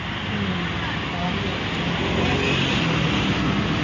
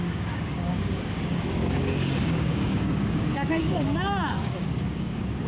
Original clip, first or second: first